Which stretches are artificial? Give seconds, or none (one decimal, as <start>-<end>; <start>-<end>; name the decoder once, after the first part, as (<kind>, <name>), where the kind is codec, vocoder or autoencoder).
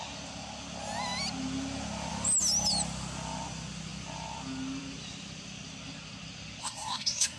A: 6.6-7.4 (codec, SNAC)